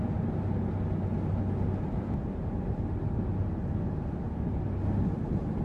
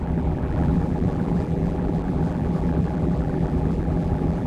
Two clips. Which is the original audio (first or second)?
first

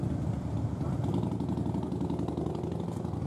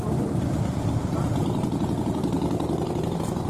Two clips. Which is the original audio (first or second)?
first